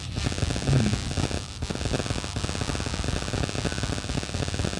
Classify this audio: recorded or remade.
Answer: recorded